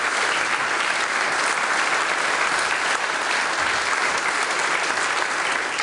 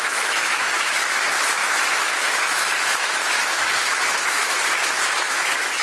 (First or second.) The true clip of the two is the first